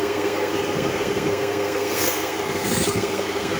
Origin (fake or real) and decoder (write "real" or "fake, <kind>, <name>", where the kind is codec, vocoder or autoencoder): fake, codec, SNAC